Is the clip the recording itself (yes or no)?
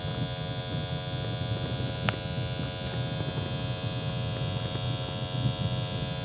yes